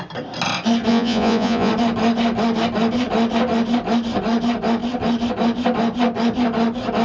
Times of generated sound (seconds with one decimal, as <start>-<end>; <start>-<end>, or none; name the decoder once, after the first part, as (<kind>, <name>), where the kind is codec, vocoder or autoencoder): 0.9-1.7 (vocoder, Vocos)